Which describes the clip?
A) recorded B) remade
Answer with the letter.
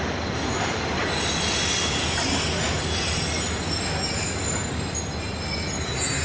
A